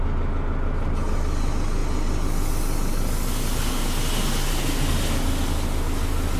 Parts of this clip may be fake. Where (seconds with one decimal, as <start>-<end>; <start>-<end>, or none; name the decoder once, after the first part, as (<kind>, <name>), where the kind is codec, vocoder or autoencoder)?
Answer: none